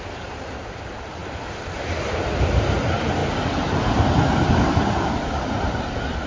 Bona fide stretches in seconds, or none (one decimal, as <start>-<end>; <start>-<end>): 0.0-3.2